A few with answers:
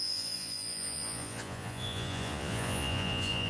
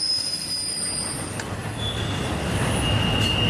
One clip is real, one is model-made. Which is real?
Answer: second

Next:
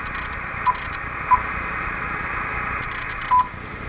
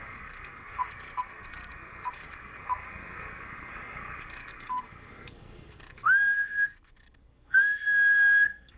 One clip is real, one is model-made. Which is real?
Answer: first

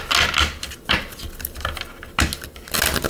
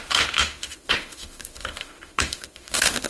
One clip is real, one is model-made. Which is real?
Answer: first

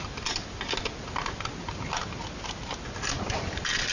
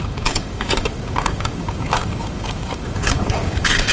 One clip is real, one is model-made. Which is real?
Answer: first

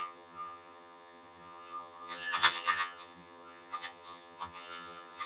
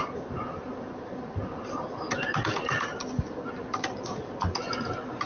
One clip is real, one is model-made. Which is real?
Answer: second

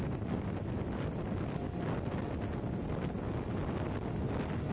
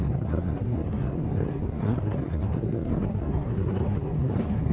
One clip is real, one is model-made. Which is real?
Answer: first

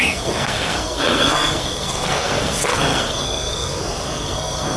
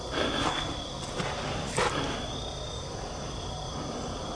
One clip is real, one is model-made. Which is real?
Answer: second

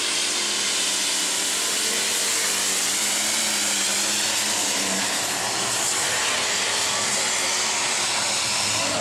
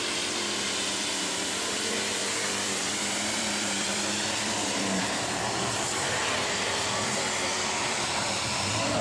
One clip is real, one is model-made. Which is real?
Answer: first